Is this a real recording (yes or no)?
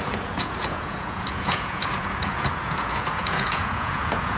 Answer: no